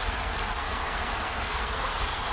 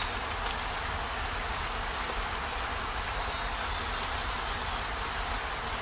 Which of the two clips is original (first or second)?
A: second